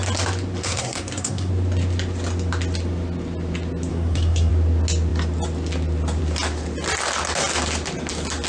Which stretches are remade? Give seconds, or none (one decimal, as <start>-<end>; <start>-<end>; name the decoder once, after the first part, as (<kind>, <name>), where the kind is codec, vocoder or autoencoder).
0.6-1.5 (codec, SNAC); 3.9-4.5